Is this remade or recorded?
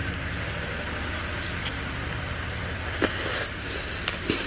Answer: recorded